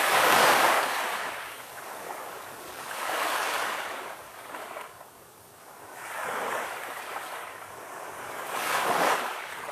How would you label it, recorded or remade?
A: remade